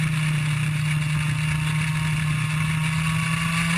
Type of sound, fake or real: real